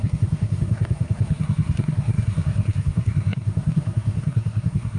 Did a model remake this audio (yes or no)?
yes